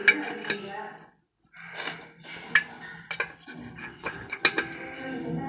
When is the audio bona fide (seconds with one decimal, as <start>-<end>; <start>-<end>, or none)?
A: 0.0-3.8; 4.4-5.5

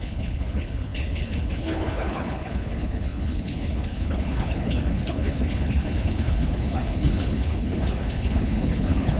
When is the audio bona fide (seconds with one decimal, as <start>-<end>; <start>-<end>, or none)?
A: none

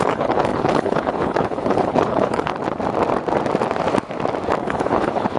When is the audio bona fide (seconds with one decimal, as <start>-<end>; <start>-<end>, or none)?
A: 2.5-4.6

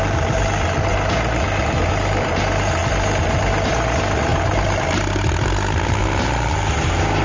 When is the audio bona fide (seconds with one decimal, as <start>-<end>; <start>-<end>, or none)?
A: 0.0-7.2

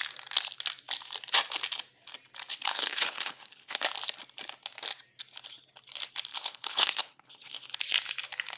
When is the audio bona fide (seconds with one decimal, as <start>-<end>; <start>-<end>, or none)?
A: 0.0-2.5; 3.8-6.3; 7.7-8.6